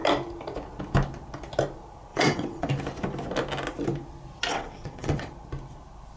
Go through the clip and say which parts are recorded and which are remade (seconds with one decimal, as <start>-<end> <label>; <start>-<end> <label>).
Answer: 0.0-2.1 recorded; 2.1-2.7 remade; 2.7-4.5 recorded; 4.5-5.3 remade; 5.3-6.2 recorded